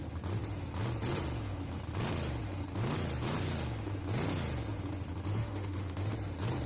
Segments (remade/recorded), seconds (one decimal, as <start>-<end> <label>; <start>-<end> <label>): 0.0-5.4 recorded; 5.4-6.1 remade; 6.1-6.7 recorded

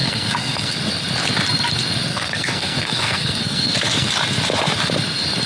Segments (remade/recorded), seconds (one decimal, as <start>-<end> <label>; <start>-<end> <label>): 0.0-0.8 remade; 0.8-2.1 recorded; 2.1-4.1 remade; 4.1-5.5 recorded

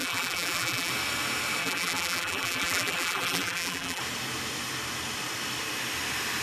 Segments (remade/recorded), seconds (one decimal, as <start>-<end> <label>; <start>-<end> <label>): 0.0-0.9 remade; 0.9-1.6 recorded; 1.6-4.0 remade; 4.0-6.4 recorded